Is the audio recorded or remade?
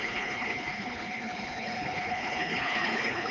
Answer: remade